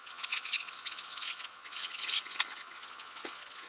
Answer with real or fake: fake